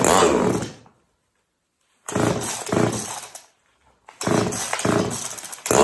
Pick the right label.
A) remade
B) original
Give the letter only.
B